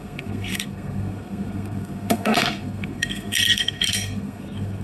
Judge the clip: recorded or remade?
remade